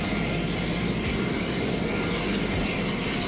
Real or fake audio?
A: real